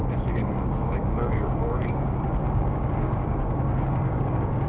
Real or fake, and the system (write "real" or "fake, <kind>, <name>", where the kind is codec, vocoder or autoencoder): fake, codec, DAC